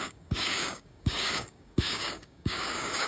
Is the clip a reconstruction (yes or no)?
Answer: yes